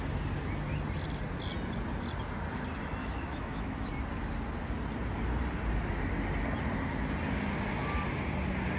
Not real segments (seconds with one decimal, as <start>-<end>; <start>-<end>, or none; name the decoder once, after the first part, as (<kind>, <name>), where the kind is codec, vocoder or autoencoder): 3.0-3.9 (autoencoder, DAC-VAE)